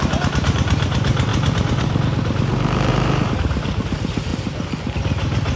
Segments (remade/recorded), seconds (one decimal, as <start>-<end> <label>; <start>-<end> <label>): 0.0-1.3 remade; 1.3-2.9 recorded; 2.9-4.3 remade; 4.3-5.0 recorded; 5.0-5.6 remade

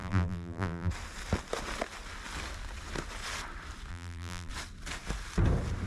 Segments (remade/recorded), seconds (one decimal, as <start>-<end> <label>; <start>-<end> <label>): 0.0-0.9 remade; 0.9-3.9 recorded; 3.9-4.5 remade; 4.5-5.9 recorded

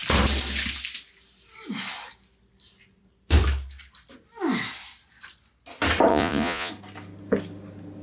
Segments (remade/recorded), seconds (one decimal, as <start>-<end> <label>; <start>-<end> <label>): 0.0-6.1 recorded; 6.1-6.7 remade; 6.7-8.0 recorded

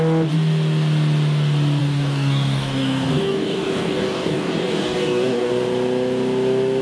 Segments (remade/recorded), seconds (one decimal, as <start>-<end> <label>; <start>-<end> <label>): 0.0-1.8 recorded; 1.8-5.5 remade; 5.5-6.8 recorded

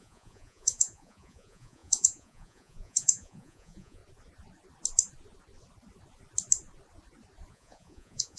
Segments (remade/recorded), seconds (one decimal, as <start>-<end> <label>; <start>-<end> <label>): 0.0-4.0 remade; 4.0-7.5 recorded; 7.5-8.4 remade

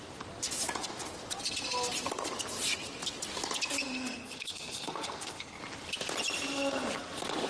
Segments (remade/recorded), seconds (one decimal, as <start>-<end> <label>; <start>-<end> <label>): 0.0-4.2 recorded; 4.2-5.6 remade; 5.6-7.5 recorded

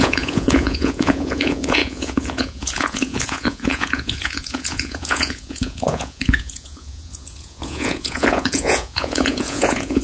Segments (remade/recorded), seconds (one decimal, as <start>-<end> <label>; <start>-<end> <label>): 0.0-10.0 remade